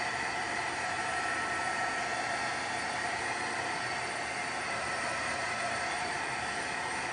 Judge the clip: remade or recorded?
remade